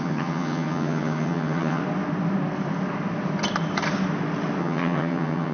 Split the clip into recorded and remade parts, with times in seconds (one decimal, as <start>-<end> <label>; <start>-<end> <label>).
0.0-1.8 remade; 1.8-4.6 recorded; 4.6-5.5 remade